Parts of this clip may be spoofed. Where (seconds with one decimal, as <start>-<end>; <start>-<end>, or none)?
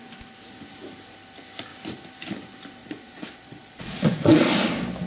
2.8-4.5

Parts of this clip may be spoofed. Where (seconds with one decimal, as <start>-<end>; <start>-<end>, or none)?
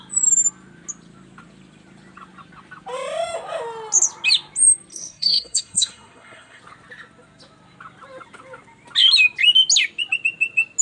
4.9-6.6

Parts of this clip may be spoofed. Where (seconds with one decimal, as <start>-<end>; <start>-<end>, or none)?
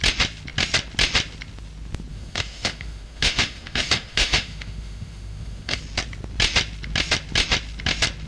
2.1-5.8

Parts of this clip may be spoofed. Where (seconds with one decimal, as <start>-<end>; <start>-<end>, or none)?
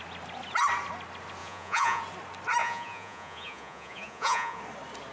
1.4-2.0; 2.6-4.6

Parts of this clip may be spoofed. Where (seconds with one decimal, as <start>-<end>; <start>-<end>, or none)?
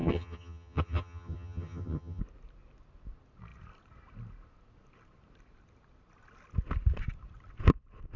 0.0-2.2